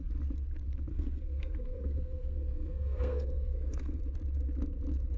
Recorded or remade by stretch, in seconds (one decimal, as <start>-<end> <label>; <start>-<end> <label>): 0.0-0.9 recorded; 0.9-4.0 remade; 4.0-5.2 recorded